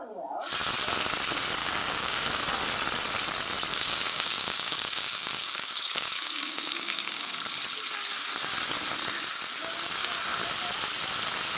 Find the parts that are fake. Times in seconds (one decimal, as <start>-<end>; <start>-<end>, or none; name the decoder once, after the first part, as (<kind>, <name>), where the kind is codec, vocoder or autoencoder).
1.6-2.3 (codec, DAC); 3.7-7.3; 9.6-10.2